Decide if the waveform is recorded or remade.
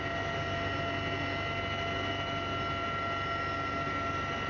recorded